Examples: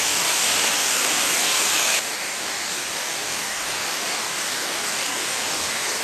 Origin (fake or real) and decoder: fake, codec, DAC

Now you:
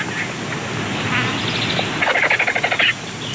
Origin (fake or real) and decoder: real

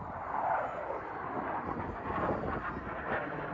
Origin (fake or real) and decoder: real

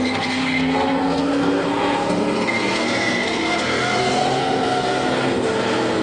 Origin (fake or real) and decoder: fake, codec, SNAC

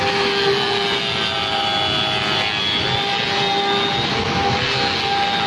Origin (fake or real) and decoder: real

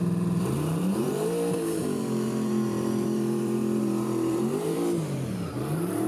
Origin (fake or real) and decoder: fake, vocoder, BigVGAN v2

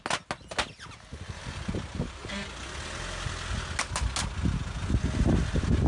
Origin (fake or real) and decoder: real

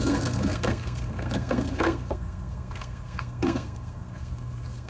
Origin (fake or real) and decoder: fake, codec, SNAC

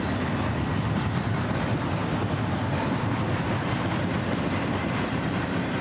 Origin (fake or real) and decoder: real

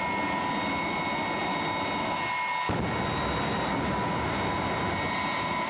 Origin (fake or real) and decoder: real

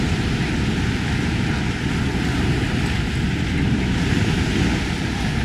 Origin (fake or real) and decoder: real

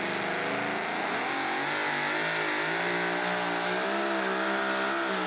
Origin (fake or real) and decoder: real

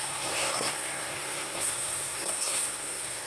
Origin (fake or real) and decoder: fake, codec, SNAC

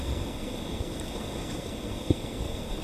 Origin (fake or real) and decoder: fake, codec, SNAC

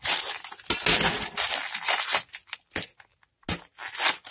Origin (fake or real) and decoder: real